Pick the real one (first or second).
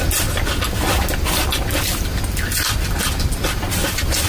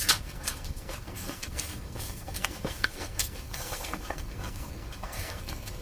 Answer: first